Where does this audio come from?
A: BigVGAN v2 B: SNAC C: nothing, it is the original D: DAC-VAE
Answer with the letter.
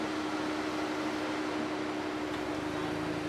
C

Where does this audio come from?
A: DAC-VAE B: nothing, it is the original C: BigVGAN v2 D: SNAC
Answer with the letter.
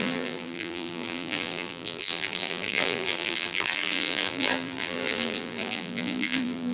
C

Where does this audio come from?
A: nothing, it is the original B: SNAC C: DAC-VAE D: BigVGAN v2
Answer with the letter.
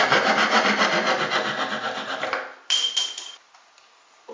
A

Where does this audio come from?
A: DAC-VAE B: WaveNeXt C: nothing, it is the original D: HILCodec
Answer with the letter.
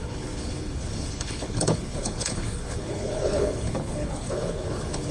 D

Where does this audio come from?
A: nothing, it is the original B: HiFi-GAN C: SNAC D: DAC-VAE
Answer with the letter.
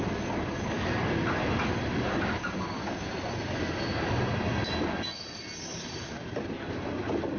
A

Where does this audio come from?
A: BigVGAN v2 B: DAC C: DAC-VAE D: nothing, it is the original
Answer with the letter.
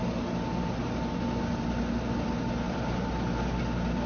D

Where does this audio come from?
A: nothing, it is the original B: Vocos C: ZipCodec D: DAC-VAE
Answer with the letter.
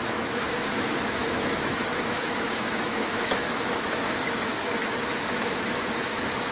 D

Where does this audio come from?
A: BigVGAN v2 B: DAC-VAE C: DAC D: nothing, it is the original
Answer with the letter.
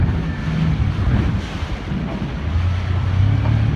D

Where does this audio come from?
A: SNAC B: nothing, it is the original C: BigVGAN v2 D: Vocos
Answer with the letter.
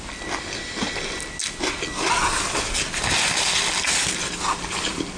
B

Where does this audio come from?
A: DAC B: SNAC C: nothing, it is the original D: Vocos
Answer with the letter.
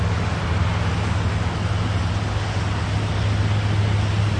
C